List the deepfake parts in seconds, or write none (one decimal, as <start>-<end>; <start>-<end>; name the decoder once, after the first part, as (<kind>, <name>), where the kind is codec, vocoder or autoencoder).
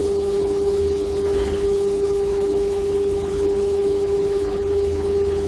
0.0-5.5 (codec, HILCodec)